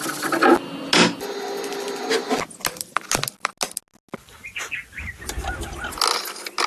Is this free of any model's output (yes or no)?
yes